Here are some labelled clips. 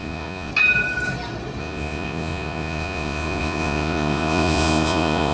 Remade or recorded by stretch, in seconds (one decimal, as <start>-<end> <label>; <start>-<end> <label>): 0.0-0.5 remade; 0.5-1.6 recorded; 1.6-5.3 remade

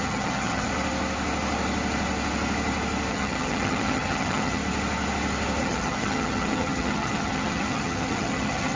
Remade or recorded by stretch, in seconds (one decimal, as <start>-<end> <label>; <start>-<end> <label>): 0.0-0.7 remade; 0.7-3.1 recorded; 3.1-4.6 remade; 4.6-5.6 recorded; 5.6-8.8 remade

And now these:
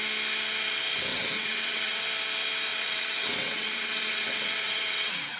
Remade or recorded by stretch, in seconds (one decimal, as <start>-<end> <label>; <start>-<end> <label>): 0.0-1.1 recorded; 1.1-2.0 remade; 2.0-2.7 recorded; 2.7-5.4 remade